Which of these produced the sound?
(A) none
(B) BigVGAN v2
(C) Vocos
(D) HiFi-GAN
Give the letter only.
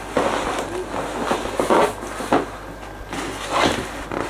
A